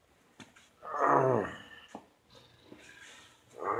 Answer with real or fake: real